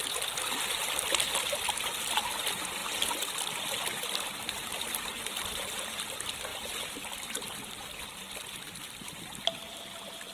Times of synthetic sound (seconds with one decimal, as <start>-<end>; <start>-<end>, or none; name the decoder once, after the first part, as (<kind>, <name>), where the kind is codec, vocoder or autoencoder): none